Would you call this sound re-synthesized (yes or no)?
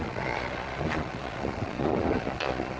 yes